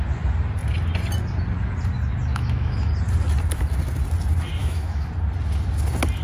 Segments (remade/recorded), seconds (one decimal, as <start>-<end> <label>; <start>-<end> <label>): 0.0-2.3 recorded; 2.3-2.9 remade; 2.9-4.6 recorded; 4.6-5.1 remade; 5.1-6.2 recorded